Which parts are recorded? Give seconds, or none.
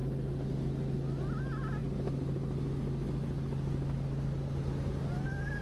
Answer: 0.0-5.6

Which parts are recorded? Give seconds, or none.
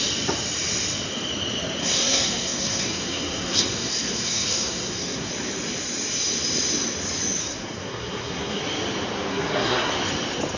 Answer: 0.0-1.8; 5.3-7.4; 8.6-9.3; 9.9-10.6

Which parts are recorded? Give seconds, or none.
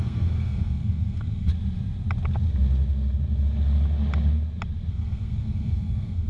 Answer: 1.5-4.9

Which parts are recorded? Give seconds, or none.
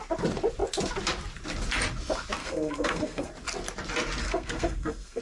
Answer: 0.0-2.4; 3.3-4.2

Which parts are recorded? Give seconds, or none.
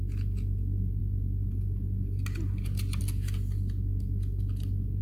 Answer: 0.0-5.0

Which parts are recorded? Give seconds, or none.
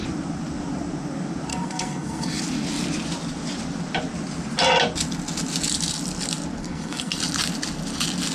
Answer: 0.0-1.5; 2.4-6.6; 7.2-8.3